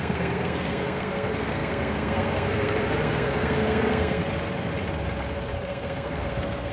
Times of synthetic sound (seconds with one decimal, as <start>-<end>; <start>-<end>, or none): 0.0-4.2; 5.5-6.7